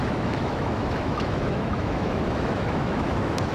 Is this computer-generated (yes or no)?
yes